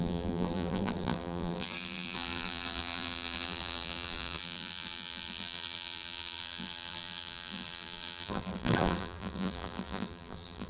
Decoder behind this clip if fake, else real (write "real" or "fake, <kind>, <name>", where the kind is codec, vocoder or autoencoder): fake, vocoder, BigVGAN v2